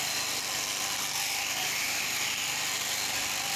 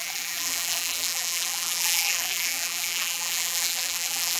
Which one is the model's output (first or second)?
second